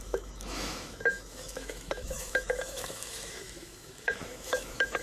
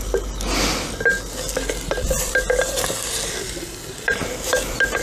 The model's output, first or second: first